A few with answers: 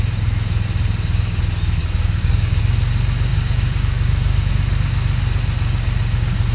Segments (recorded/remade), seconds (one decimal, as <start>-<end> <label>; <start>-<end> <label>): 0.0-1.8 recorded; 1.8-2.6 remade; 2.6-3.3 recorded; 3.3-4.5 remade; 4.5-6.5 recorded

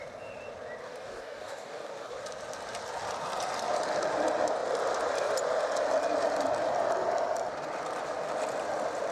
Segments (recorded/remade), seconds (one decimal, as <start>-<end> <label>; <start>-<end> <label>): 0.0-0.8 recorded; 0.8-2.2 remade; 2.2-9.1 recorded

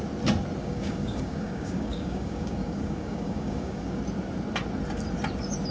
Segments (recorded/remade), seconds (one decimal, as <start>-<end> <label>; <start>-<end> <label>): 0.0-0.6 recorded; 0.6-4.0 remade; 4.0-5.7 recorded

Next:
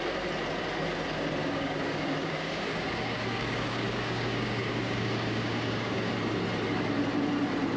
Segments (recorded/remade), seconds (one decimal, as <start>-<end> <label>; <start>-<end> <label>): 0.0-1.4 recorded; 1.4-6.1 remade; 6.1-7.8 recorded